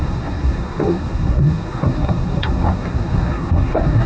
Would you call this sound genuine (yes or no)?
no